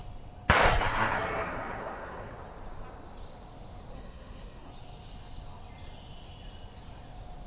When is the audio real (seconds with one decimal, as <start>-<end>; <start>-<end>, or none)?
0.0-0.7; 2.3-3.9; 4.7-7.5

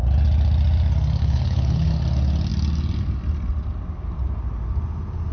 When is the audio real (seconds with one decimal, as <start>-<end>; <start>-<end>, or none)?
0.0-1.2; 1.9-5.3

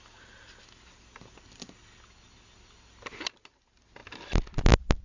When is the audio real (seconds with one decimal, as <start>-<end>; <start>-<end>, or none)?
0.0-5.0

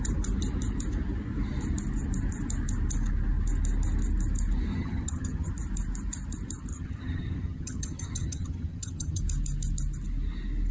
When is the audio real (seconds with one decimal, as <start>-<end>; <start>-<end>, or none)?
0.0-4.7; 5.5-6.7; 9.2-10.7

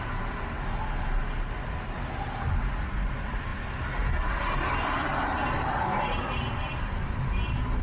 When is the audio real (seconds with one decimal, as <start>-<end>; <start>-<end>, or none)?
0.0-7.8